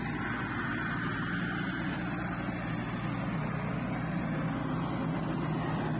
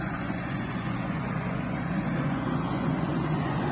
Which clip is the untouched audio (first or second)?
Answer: first